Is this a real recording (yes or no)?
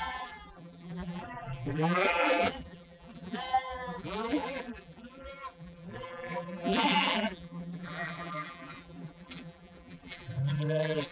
no